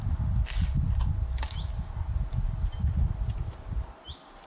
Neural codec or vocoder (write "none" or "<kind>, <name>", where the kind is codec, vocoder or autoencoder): none